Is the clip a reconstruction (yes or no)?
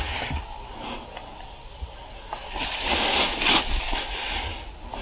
no